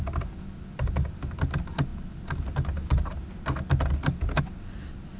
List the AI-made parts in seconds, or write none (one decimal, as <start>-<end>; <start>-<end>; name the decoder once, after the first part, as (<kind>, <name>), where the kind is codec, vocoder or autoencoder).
none